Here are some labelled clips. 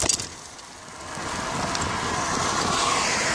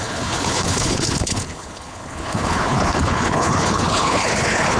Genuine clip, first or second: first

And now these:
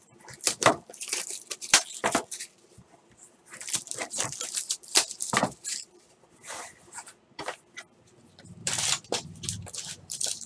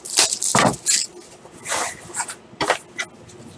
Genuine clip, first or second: second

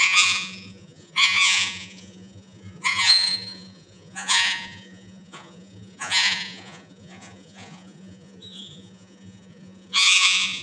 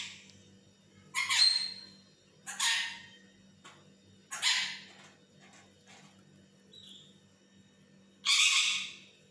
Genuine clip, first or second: second